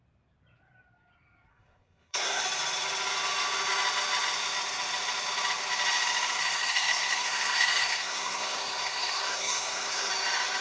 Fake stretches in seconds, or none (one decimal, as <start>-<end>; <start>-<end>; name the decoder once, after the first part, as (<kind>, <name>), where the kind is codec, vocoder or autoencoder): 1.5-2.4 (codec, SNAC); 6.4-10.1